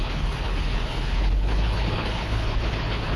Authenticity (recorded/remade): remade